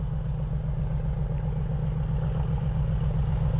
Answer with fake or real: real